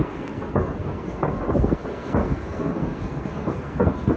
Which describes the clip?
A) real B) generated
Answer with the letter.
B